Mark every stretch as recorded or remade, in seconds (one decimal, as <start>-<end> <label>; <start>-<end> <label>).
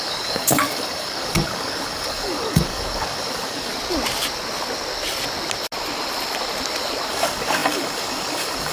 0.0-3.7 remade; 3.7-7.1 recorded; 7.1-8.7 remade